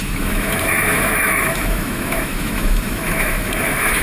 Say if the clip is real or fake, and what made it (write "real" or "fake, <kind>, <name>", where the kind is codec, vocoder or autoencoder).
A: fake, autoencoder, DAC-VAE